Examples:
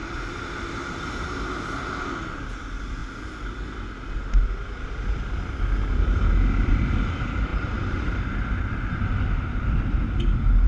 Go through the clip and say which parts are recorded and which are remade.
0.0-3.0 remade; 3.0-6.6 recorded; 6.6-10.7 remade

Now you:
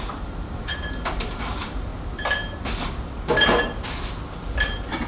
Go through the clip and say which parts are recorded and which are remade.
0.0-1.9 remade; 1.9-5.1 recorded

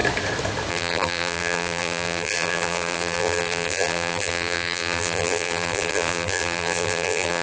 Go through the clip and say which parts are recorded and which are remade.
0.0-0.7 recorded; 0.7-7.4 remade

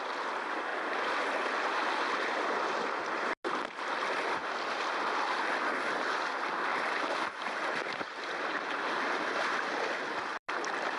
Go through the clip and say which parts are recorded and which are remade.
0.0-6.7 recorded; 6.7-8.9 remade; 8.9-11.0 recorded